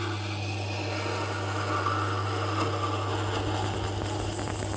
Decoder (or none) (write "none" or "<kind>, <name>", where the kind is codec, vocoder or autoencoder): none